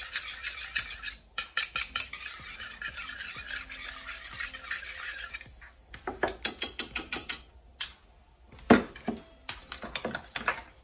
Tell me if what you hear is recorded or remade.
recorded